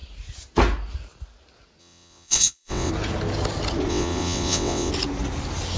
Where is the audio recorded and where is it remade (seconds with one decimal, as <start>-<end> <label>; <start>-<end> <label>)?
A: 0.0-1.8 recorded; 1.8-2.9 remade; 2.9-3.9 recorded; 3.9-4.9 remade; 4.9-5.8 recorded